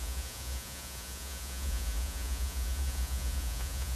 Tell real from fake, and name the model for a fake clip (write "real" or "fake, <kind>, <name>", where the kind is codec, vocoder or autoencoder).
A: fake, vocoder, Vocos